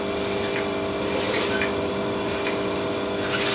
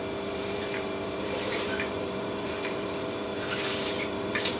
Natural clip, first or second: first